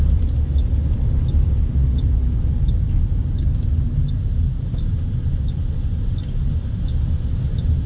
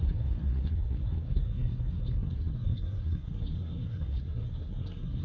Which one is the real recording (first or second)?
first